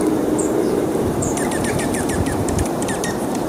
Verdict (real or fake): fake